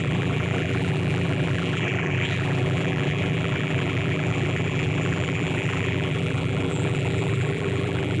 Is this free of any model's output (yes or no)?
no